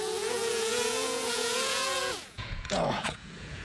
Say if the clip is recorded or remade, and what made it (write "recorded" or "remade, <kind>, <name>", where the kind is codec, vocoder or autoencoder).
remade, vocoder, Vocos